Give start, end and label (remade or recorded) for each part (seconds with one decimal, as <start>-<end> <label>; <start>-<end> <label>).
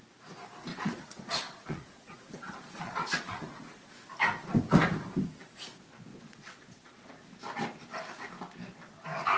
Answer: 0.0-0.7 recorded; 0.7-3.9 remade; 3.9-6.1 recorded; 6.1-7.1 remade; 7.1-9.4 recorded